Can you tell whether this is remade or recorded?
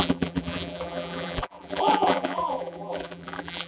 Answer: remade